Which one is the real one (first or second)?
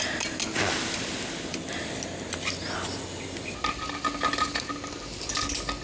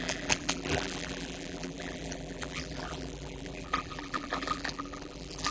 first